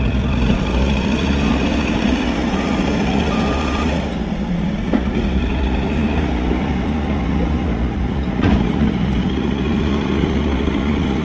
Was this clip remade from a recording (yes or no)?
yes